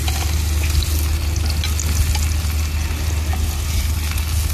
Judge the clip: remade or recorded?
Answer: recorded